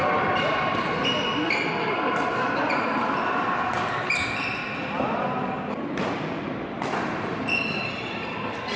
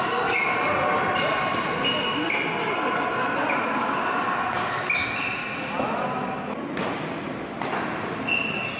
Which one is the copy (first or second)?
first